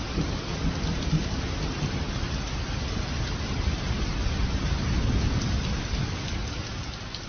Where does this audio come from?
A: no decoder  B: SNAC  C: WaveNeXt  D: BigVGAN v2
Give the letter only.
A